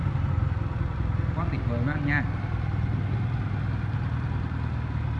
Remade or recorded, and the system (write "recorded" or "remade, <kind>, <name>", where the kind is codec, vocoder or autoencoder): recorded